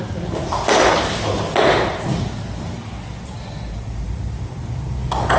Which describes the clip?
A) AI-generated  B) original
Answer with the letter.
B